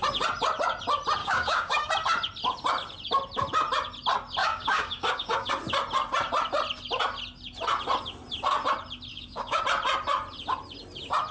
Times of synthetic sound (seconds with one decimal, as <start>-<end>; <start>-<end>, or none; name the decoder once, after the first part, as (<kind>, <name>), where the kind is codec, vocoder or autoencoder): 1.2-1.9 (codec, DAC); 4.4-5.5; 9.1-9.6